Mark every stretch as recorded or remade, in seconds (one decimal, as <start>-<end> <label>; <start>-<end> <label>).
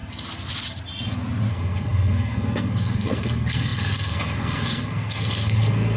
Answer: 0.0-1.5 recorded; 1.5-6.0 remade